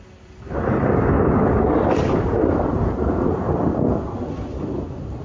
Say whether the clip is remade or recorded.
recorded